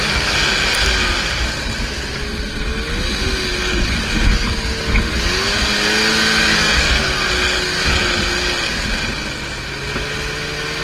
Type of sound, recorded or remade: recorded